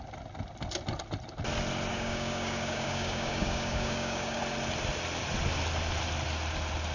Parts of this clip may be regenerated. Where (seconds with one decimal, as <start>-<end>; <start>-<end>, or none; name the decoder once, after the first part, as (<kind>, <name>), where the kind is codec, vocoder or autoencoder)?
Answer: 1.9-4.4 (codec, DAC)